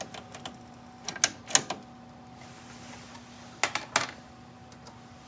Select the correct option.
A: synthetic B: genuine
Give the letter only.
B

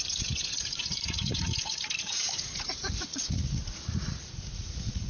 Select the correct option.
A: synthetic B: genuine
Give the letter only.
A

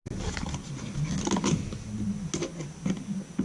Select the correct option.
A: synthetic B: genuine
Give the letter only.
B